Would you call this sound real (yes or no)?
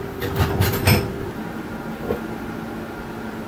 yes